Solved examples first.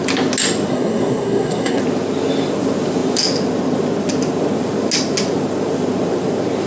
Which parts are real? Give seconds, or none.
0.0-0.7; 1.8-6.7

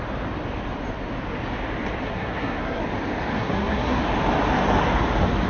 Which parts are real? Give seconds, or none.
0.0-2.0; 2.8-3.3; 4.0-5.5

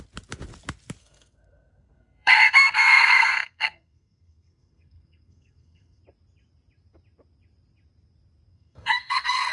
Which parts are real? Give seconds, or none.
0.0-1.0; 6.0-8.5